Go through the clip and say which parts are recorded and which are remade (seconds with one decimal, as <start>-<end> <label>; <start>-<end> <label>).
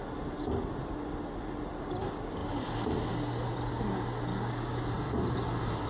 0.0-4.3 recorded; 4.3-4.9 remade; 4.9-5.9 recorded